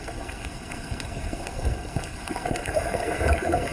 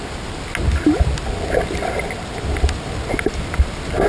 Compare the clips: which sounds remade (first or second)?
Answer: first